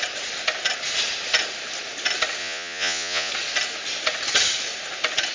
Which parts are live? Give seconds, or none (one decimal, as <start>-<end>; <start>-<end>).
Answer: 0.0-2.4; 3.3-5.3